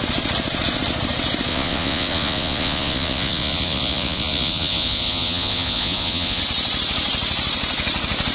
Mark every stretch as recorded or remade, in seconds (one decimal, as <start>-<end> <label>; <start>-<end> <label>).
0.0-1.5 recorded; 1.5-6.4 remade; 6.4-8.3 recorded